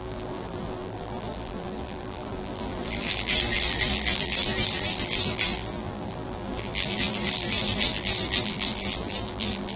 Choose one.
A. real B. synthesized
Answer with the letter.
B